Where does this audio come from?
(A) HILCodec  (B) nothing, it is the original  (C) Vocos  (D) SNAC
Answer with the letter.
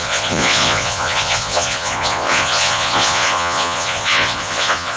C